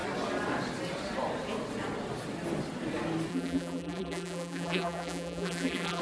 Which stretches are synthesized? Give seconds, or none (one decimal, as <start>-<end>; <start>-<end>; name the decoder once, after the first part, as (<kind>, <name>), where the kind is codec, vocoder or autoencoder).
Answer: 3.3-6.0 (vocoder, BigVGAN v2)